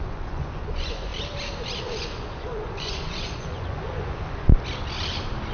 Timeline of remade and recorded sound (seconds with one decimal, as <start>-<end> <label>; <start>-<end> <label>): 0.0-1.1 remade; 1.1-1.8 recorded; 1.8-4.5 remade; 4.5-5.5 recorded